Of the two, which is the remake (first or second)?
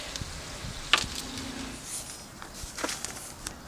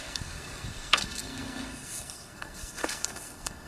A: second